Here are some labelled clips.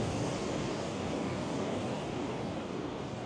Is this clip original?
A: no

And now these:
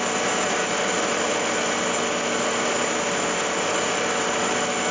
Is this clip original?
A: yes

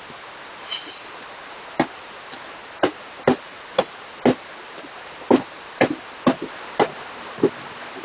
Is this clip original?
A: yes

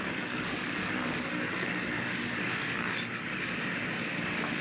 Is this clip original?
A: no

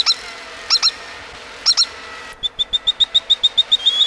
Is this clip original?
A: yes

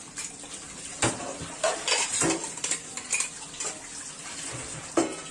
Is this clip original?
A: yes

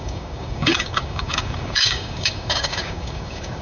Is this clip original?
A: no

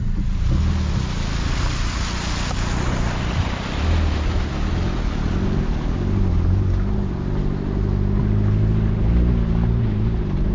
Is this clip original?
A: yes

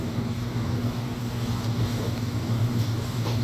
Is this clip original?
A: no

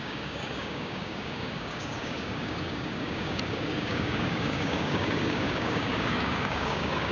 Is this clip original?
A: no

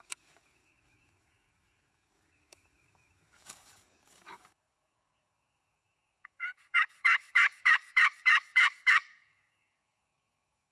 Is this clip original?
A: no